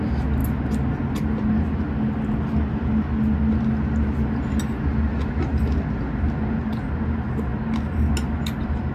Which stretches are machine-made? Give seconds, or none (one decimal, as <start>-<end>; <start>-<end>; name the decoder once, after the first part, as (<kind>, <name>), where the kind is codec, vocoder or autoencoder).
none

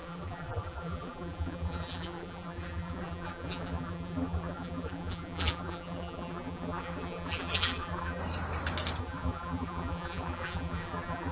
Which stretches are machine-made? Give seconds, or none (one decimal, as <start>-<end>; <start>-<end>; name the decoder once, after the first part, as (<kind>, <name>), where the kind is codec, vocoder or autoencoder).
0.0-8.2 (vocoder, BigVGAN v2); 9.0-11.3

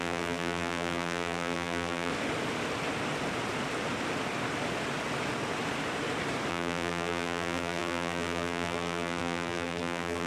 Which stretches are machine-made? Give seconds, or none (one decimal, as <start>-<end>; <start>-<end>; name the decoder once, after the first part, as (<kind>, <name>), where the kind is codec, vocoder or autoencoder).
0.0-2.1 (vocoder, BigVGAN v2); 6.5-10.3

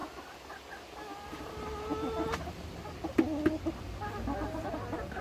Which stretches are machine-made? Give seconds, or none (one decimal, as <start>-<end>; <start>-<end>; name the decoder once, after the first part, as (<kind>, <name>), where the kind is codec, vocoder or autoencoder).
1.3-5.2 (vocoder, BigVGAN v2)

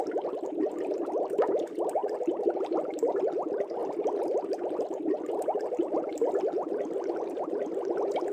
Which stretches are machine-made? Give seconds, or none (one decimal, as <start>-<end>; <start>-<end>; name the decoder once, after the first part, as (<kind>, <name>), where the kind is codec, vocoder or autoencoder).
2.0-3.2 (vocoder, BigVGAN v2); 3.8-4.4

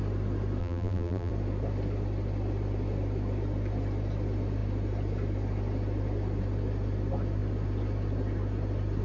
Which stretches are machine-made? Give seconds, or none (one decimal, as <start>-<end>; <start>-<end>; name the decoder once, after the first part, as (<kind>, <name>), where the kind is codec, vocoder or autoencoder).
0.6-1.3 (vocoder, BigVGAN v2)